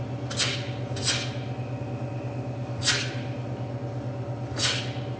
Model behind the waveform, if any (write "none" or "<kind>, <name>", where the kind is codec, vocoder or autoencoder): none